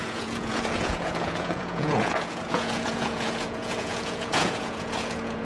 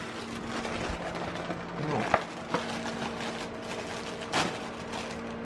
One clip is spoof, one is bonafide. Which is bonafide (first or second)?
second